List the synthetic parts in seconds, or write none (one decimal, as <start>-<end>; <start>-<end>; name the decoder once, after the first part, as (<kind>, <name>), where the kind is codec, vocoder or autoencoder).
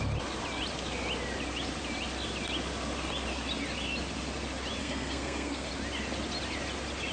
4.8-5.7 (codec, SNAC)